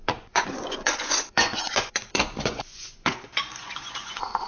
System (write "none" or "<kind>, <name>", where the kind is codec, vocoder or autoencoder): vocoder, Vocos